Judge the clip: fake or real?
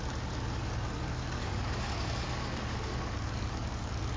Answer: fake